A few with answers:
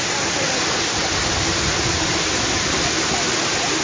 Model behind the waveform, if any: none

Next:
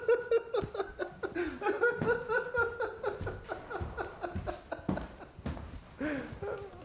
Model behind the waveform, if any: none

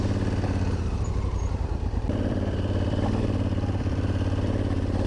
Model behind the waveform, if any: vocoder, BigVGAN v2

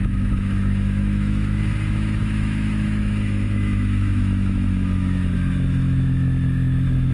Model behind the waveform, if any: autoencoder, DAC-VAE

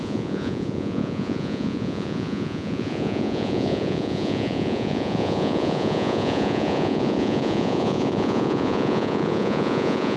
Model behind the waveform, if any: vocoder, Vocos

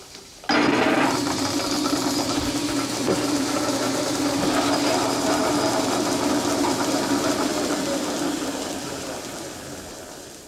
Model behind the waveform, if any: none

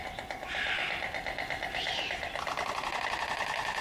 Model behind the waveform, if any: none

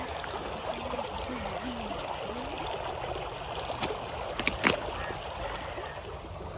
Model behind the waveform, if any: none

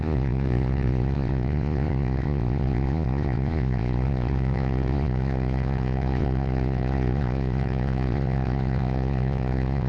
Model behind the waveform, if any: vocoder, Vocos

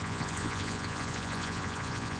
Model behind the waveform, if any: vocoder, Vocos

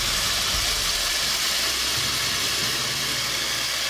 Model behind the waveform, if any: none